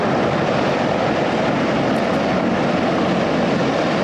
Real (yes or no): yes